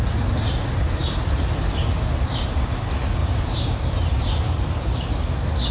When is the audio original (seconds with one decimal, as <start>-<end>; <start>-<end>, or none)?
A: 0.0-3.2; 4.9-5.7